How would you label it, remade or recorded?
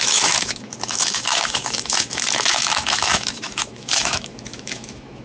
remade